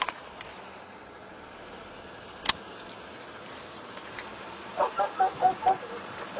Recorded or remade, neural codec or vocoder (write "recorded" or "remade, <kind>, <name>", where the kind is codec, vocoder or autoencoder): recorded